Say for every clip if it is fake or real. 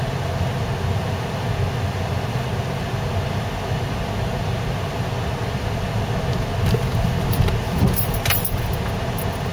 real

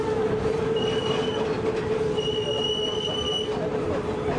real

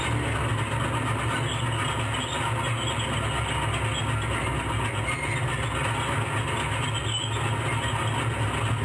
real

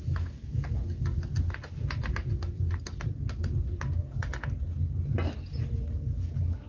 real